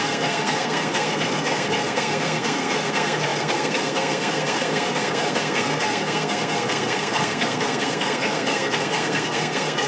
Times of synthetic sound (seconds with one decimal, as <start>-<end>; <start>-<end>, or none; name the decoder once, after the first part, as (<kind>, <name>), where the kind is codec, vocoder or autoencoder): 0.0-9.9 (codec, SNAC)